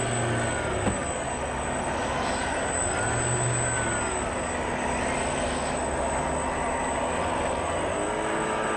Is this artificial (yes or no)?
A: no